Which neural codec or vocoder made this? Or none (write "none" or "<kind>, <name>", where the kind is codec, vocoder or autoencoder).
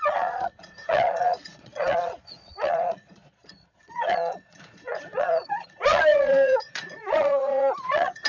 vocoder, Vocos